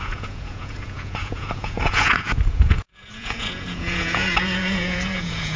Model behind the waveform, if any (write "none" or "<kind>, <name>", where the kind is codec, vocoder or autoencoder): vocoder, Vocos